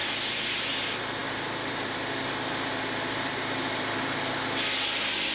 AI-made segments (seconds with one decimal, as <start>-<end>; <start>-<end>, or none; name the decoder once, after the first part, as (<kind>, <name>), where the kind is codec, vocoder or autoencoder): none